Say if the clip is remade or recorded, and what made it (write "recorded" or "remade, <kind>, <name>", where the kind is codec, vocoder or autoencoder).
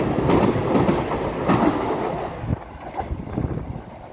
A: remade, vocoder, BigVGAN v2